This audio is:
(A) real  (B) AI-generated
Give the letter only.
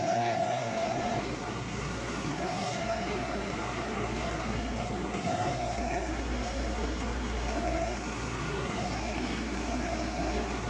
B